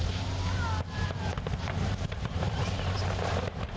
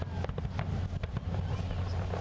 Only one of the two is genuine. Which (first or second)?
second